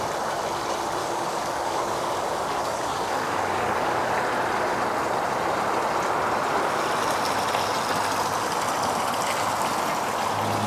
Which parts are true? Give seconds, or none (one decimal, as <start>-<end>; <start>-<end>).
0.0-1.0; 4.1-10.7